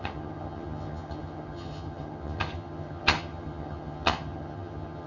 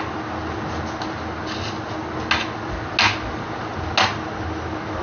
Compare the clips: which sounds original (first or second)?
second